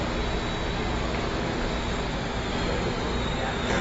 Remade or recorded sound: recorded